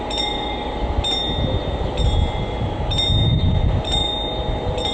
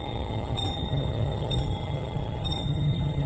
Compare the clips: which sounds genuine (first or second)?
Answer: first